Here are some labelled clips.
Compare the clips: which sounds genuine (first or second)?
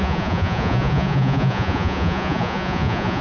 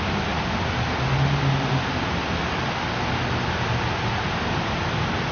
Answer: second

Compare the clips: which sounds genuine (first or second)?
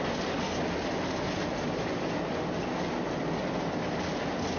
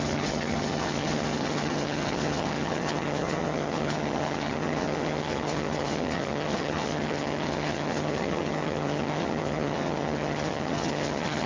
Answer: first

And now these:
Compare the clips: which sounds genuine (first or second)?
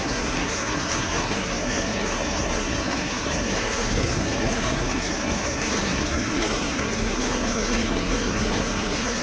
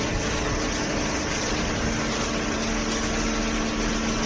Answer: second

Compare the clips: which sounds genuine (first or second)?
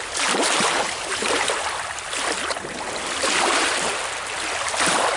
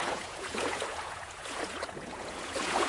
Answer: first